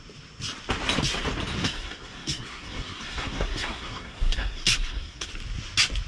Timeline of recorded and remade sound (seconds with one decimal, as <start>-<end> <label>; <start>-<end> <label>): 0.0-1.6 recorded; 1.6-5.3 remade; 5.3-6.1 recorded